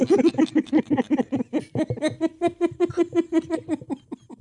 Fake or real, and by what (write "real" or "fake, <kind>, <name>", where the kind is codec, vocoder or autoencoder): real